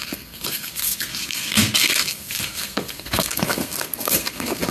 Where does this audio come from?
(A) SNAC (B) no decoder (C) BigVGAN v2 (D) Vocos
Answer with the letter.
A